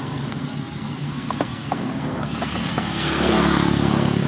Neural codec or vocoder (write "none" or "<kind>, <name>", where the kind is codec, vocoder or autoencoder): codec, SNAC